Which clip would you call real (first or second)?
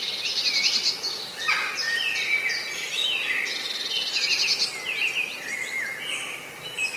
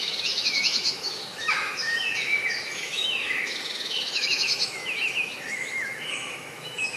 first